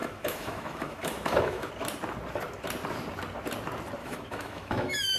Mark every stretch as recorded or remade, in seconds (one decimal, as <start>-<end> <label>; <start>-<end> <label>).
0.0-1.7 remade; 1.7-4.0 recorded; 4.0-5.2 remade